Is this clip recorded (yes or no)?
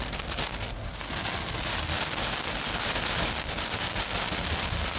yes